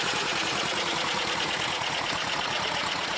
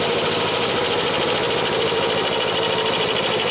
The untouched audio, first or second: second